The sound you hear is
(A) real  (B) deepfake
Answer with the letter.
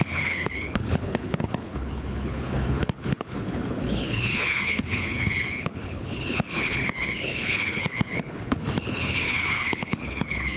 B